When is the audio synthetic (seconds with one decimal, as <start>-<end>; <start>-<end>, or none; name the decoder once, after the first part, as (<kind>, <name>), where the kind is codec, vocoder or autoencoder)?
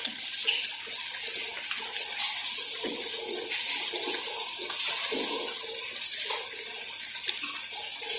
none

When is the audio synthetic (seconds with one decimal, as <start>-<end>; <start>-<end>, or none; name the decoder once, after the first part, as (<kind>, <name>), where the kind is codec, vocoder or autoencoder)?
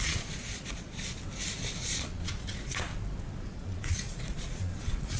0.0-1.2 (vocoder, Vocos); 1.8-2.9; 3.5-5.2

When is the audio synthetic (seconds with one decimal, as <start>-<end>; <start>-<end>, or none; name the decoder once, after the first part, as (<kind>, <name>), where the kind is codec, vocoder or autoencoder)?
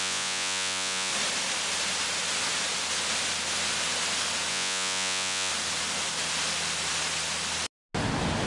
0.0-1.1 (vocoder, Vocos); 4.5-5.5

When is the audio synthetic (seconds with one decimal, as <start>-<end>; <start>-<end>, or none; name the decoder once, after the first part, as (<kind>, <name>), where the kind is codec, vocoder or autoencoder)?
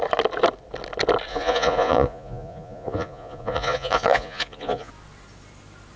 1.3-4.9 (vocoder, Vocos)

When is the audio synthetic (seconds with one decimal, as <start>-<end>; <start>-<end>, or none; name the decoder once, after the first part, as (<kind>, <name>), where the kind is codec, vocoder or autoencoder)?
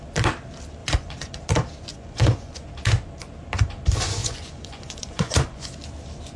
0.8-1.4 (vocoder, Vocos); 1.9-2.7; 4.2-5.7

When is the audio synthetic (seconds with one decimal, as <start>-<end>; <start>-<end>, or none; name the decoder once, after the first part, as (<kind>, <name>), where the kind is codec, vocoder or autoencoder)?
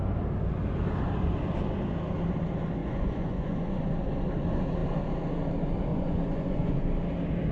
2.8-3.8 (vocoder, Vocos); 5.9-6.8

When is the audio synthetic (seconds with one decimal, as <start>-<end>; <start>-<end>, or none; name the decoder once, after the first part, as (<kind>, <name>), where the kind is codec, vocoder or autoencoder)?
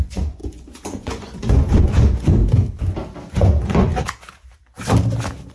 0.0-2.4 (vocoder, Vocos); 3.3-3.9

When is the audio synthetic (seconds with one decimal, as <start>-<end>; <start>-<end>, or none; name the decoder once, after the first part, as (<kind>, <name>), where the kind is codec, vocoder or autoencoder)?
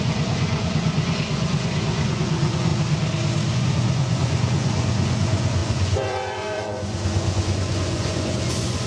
0.0-2.7 (vocoder, Vocos); 3.5-8.9